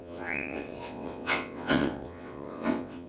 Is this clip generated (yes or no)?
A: yes